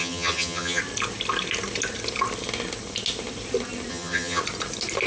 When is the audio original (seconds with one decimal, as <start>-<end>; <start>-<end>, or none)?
0.8-3.9; 4.4-5.1